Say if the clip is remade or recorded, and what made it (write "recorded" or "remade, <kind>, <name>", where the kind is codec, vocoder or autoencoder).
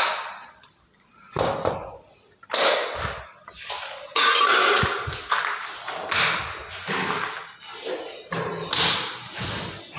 recorded